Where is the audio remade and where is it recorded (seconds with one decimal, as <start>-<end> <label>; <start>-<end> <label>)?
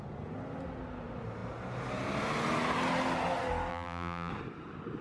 0.0-3.7 recorded; 3.7-4.3 remade; 4.3-5.0 recorded